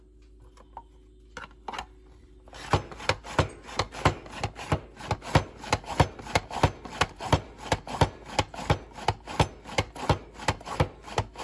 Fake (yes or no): no